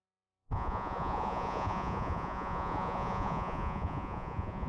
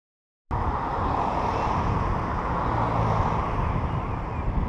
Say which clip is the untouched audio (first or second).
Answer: second